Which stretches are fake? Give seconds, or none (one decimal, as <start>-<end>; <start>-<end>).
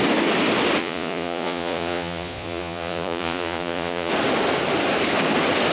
0.8-4.1